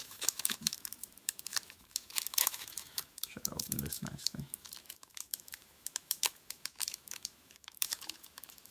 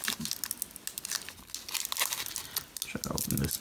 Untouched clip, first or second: second